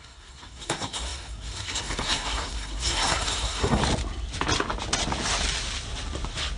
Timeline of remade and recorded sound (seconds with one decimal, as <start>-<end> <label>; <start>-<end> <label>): 0.0-3.8 remade; 3.8-6.6 recorded